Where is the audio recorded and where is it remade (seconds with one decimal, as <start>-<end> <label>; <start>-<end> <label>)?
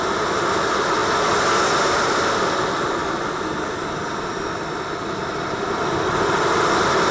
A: 0.0-7.1 recorded